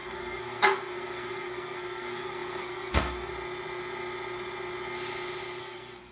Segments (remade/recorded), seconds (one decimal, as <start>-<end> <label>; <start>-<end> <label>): 0.0-3.3 remade; 3.3-5.6 recorded; 5.6-6.1 remade